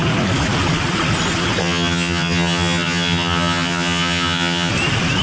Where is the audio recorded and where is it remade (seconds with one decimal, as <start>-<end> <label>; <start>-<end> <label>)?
0.0-1.6 recorded; 1.6-4.7 remade; 4.7-5.2 recorded